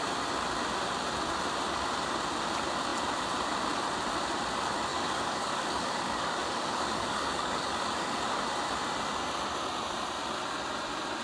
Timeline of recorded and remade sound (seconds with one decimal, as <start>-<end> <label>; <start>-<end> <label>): 0.0-4.9 recorded; 4.9-8.4 remade; 8.4-11.2 recorded